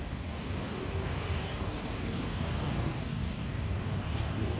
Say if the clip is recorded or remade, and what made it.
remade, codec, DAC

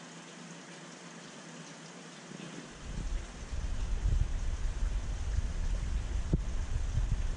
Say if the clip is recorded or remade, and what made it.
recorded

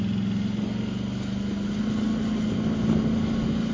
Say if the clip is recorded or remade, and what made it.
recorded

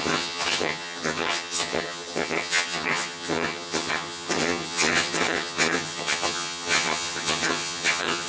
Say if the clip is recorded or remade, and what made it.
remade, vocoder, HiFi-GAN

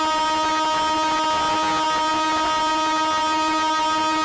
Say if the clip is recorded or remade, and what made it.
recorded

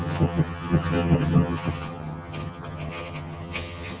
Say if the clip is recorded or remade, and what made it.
remade, vocoder, HiFi-GAN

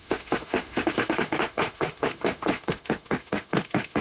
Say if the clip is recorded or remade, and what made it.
remade, autoencoder, DAC-VAE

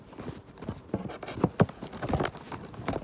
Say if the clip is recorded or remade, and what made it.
recorded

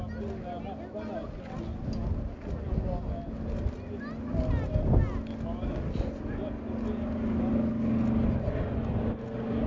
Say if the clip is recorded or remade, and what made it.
recorded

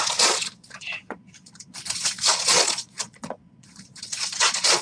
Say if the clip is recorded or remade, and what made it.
remade, vocoder, Vocos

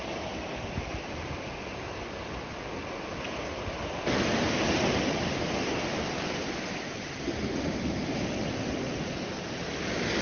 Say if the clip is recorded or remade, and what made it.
recorded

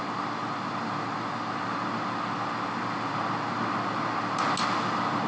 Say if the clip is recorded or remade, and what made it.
recorded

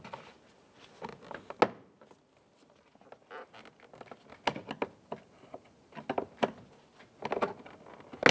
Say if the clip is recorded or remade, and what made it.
recorded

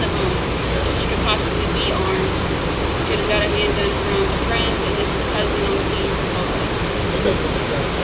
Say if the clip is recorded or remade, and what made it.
recorded